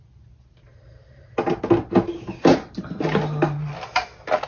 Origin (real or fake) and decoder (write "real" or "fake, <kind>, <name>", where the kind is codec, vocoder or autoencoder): real